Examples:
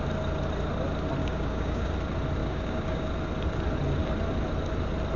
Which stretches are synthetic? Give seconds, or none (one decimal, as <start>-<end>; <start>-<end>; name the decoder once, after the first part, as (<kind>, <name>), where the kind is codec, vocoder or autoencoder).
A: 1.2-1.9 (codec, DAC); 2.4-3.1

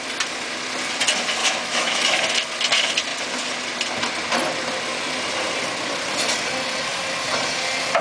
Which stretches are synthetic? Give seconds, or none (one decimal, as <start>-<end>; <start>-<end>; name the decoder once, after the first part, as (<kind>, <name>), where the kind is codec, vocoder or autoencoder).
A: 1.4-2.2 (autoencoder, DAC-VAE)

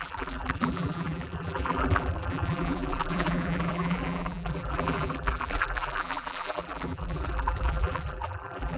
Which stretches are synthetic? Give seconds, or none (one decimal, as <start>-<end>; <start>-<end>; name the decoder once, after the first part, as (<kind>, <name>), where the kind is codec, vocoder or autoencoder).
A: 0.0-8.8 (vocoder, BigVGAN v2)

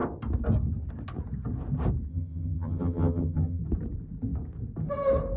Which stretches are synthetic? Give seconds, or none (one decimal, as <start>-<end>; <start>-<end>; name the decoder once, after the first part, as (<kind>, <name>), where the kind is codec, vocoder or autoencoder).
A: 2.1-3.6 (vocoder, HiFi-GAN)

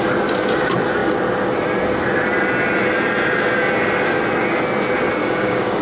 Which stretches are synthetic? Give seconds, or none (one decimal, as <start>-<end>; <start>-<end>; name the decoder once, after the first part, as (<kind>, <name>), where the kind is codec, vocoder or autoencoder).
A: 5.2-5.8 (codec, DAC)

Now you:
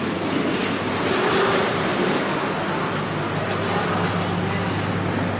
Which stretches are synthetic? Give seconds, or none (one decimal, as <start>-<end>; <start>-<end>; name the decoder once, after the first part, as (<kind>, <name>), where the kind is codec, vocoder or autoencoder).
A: none

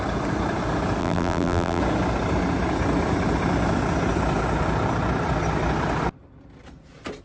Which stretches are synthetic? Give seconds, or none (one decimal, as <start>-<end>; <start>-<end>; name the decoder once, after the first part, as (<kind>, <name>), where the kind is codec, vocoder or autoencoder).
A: 1.0-1.8 (vocoder, BigVGAN v2)

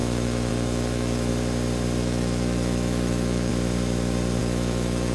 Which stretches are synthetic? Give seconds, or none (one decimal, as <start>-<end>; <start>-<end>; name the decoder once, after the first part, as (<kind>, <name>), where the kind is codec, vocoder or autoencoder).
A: 0.0-1.3 (autoencoder, DAC-VAE); 2.0-3.5; 4.4-5.1